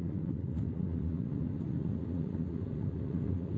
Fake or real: fake